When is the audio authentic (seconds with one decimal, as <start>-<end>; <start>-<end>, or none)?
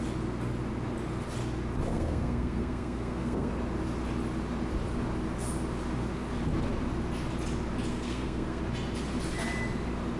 0.0-1.9; 3.5-7.9; 8.6-10.2